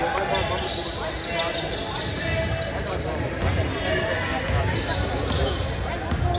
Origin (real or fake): real